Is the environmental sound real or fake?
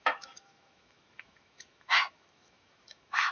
fake